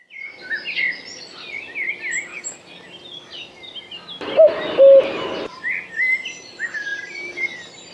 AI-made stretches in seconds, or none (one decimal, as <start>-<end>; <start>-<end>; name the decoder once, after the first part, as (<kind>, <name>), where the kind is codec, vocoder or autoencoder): none